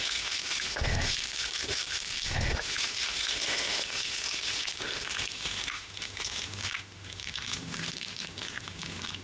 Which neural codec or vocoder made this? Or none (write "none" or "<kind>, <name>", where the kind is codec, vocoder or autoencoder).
autoencoder, DAC-VAE